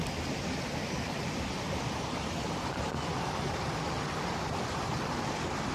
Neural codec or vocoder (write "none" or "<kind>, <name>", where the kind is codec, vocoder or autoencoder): vocoder, BigVGAN v2